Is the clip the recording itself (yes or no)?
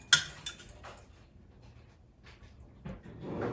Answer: yes